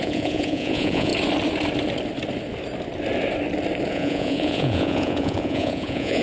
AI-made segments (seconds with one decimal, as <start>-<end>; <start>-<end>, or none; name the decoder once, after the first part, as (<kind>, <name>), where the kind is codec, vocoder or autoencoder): 0.0-1.1 (vocoder, Vocos); 3.9-6.2